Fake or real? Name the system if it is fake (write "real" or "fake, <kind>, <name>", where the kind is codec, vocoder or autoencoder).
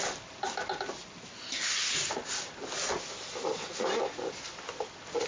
real